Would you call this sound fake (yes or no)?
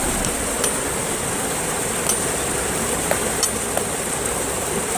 no